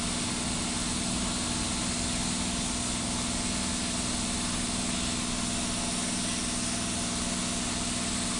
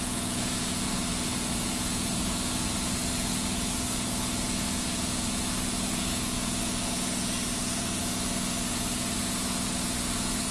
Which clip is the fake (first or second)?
second